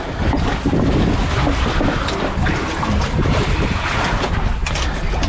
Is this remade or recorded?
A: recorded